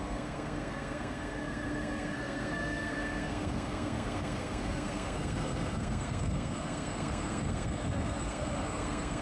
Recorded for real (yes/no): no